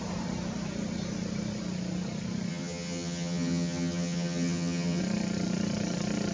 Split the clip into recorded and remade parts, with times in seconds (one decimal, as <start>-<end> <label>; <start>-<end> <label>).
0.0-2.5 recorded; 2.5-5.0 remade; 5.0-6.3 recorded

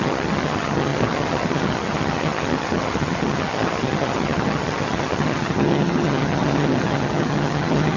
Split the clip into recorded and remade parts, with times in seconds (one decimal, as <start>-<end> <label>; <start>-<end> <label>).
0.0-8.0 remade

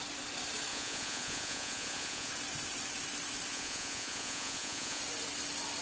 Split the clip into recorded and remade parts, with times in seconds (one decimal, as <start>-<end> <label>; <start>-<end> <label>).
0.0-0.7 recorded; 0.7-2.3 remade; 2.3-3.5 recorded; 3.5-5.0 remade; 5.0-5.8 recorded

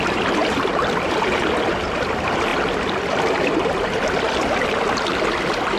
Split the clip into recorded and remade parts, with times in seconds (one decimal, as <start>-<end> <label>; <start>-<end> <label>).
0.0-0.4 recorded; 0.4-1.2 remade; 1.2-5.8 recorded

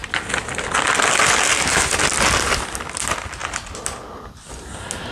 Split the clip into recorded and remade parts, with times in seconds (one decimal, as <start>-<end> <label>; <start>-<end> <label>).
0.0-5.1 recorded

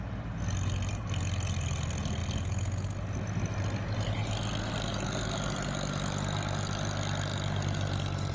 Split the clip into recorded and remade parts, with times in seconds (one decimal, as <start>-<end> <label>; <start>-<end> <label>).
0.0-8.3 recorded